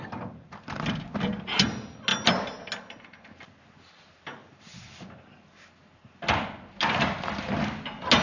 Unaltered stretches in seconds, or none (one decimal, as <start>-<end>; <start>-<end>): 0.0-8.2